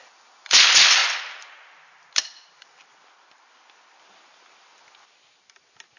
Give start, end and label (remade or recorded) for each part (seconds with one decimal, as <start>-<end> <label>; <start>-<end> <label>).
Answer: 0.0-6.0 recorded